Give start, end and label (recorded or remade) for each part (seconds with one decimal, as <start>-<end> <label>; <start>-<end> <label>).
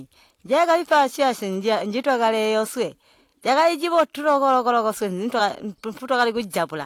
0.0-6.9 recorded